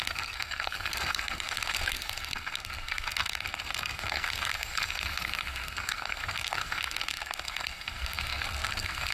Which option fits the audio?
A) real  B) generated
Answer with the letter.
B